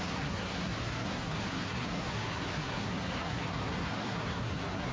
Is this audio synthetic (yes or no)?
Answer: yes